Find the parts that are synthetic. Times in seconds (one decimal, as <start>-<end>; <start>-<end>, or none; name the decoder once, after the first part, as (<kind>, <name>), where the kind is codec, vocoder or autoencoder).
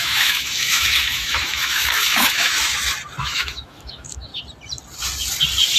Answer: 0.0-2.7 (autoencoder, DAC-VAE); 3.2-4.3